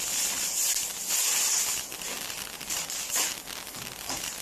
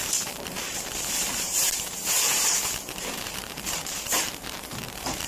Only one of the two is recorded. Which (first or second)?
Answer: first